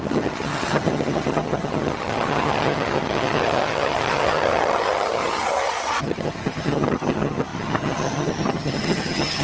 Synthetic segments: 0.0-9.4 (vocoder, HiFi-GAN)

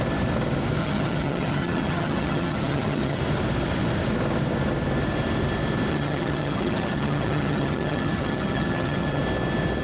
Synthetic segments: 0.8-3.2 (vocoder, HiFi-GAN); 5.9-9.2

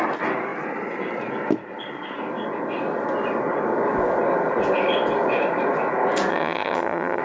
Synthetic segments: 6.3-7.2 (vocoder, HiFi-GAN)

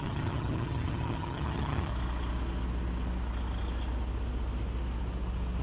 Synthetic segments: 0.0-1.9 (vocoder, HiFi-GAN)